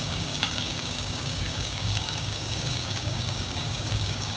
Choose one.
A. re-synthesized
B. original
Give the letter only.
A